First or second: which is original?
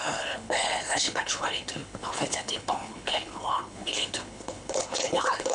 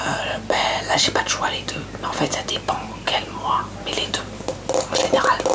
second